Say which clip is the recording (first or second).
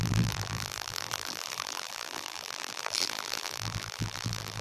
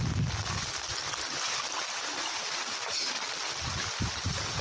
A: second